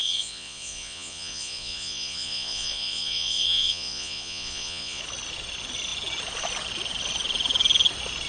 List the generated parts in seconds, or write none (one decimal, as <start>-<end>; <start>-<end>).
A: 0.0-5.0